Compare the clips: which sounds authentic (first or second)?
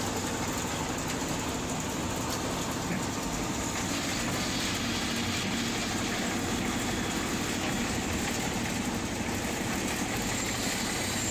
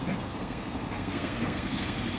first